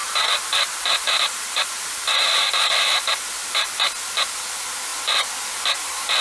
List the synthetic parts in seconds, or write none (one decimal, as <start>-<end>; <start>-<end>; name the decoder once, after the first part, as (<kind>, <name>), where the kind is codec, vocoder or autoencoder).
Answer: 0.0-3.7 (vocoder, BigVGAN v2)